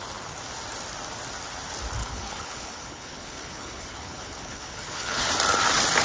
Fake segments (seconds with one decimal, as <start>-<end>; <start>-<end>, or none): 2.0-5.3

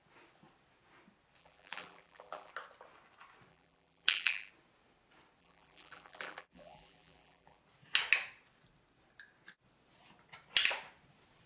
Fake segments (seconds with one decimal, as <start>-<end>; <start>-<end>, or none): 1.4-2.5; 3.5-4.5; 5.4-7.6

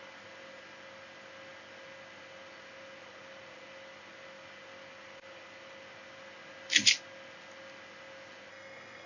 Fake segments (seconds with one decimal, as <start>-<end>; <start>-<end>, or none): 8.5-9.1

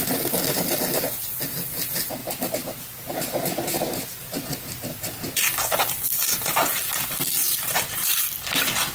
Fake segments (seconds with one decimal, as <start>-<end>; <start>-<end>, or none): 2.2-6.9; 7.4-8.2